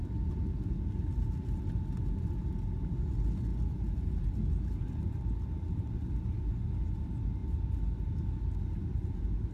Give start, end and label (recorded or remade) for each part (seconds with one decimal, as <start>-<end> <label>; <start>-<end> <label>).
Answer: 0.0-9.5 recorded